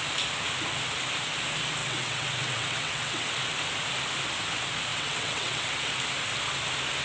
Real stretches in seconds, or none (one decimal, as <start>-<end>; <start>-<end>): 0.0-1.8; 3.3-4.9; 5.8-7.0